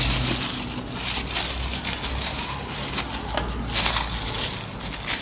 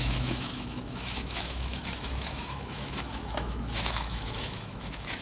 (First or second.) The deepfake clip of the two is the second